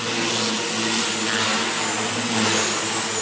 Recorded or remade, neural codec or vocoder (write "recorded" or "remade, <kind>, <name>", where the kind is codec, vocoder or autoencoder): recorded